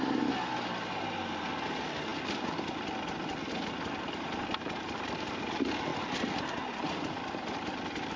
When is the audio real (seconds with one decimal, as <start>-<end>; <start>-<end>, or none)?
0.0-8.2